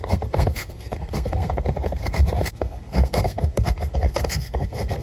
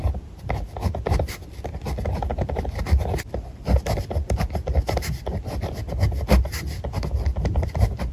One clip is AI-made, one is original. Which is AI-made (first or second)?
first